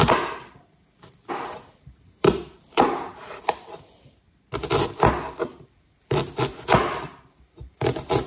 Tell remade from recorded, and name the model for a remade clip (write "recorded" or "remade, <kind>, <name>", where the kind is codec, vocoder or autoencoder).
recorded